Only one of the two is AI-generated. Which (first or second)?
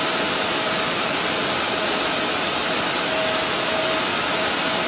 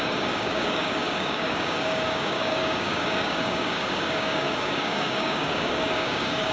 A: second